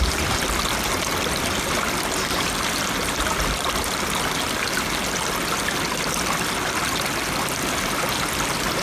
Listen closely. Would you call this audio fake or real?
real